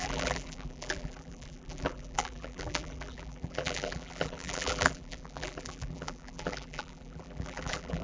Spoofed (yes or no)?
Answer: yes